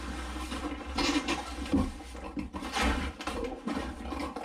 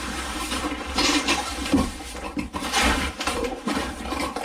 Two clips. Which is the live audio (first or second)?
first